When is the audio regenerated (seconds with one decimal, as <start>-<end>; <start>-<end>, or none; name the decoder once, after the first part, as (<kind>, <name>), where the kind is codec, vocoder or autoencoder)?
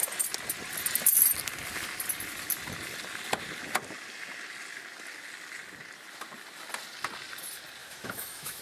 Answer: 7.8-8.6 (autoencoder, DAC-VAE)